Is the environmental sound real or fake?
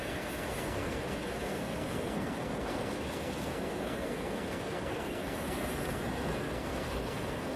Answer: fake